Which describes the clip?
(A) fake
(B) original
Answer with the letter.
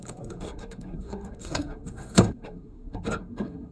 A